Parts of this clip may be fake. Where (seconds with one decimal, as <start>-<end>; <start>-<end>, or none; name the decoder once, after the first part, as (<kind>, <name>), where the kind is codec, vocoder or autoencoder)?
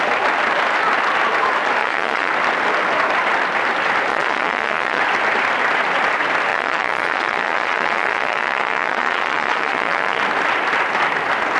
1.8-2.3 (vocoder, Vocos); 4.1-5.0; 6.5-10.2